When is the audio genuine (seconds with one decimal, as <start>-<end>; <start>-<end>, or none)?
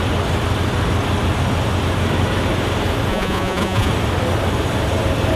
0.0-3.1; 3.9-5.4